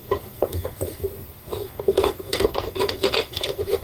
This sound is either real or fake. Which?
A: fake